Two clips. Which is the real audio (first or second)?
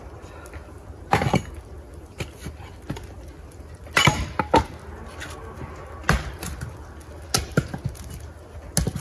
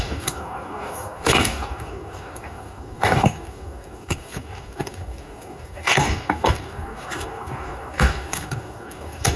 first